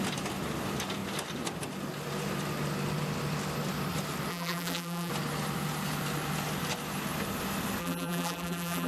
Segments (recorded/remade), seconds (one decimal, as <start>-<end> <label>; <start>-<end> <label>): 0.0-4.3 recorded; 4.3-5.1 remade; 5.1-7.8 recorded; 7.8-8.9 remade